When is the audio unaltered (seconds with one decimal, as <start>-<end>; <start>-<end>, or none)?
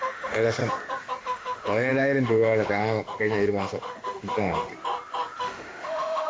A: 0.6-1.2; 4.7-5.4